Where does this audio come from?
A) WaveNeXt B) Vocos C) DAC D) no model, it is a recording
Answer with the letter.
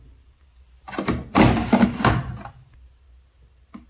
D